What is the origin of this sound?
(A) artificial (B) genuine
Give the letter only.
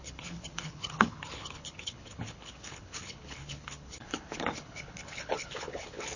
A